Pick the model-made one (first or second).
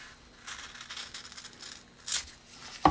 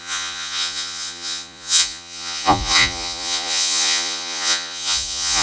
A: second